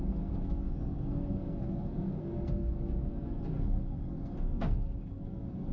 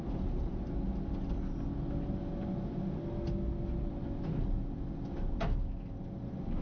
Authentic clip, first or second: second